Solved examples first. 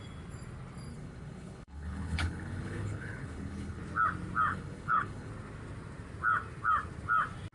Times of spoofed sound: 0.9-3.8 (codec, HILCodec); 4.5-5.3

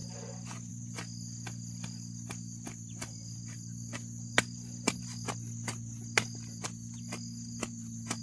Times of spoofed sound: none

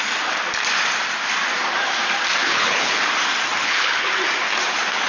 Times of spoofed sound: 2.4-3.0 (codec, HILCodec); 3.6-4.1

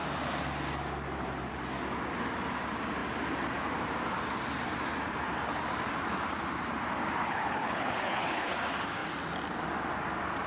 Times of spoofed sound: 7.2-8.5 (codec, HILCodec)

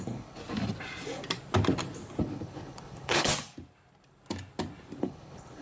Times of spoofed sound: 0.0-0.4 (codec, HILCodec); 2.2-3.3; 5.0-5.6